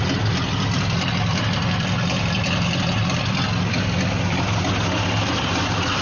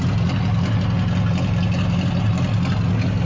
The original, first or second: second